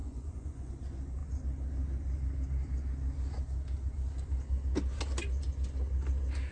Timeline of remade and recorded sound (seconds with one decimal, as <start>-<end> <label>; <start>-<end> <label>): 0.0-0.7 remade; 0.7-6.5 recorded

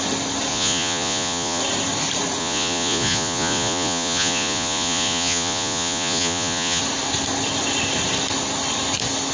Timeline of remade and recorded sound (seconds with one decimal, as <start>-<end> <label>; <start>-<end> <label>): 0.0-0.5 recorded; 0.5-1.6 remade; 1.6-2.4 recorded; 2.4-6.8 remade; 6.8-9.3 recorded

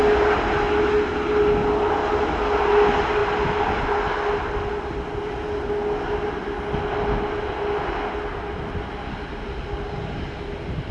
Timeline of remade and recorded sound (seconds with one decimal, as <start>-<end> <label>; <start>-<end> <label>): 0.0-10.9 recorded

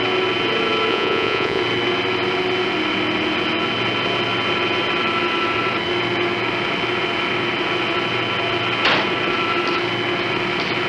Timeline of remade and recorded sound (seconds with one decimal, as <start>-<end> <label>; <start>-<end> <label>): 0.0-0.9 recorded; 0.9-1.6 remade; 1.6-10.9 recorded

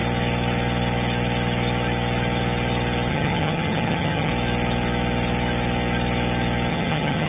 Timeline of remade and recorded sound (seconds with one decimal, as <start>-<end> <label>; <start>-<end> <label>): 0.0-3.1 recorded; 3.1-4.3 remade; 4.3-6.7 recorded; 6.7-7.3 remade

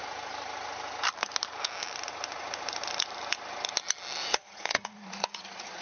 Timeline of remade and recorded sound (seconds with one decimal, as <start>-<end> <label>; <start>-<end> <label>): 0.0-4.2 recorded; 4.2-5.8 remade